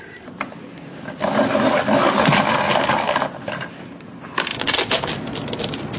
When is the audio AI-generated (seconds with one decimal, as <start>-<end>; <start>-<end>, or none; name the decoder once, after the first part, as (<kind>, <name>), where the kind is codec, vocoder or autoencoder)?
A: none